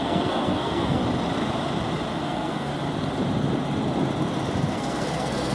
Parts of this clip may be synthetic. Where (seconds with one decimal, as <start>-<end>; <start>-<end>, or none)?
0.0-1.0; 2.2-2.7; 4.7-5.5